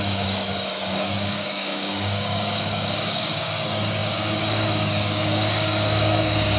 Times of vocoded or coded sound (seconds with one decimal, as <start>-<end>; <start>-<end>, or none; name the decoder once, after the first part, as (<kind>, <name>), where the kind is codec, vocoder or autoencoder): 0.0-6.6 (codec, DAC)